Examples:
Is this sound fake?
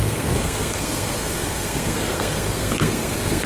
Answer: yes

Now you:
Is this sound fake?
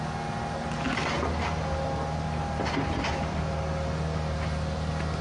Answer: no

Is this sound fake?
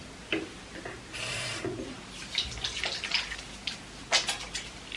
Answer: no